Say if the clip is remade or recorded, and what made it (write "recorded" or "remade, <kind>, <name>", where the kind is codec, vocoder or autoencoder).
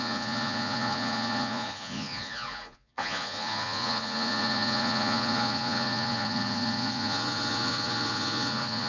remade, vocoder, Vocos